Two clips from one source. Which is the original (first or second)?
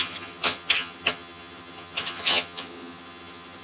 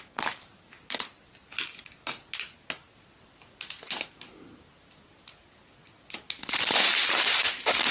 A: second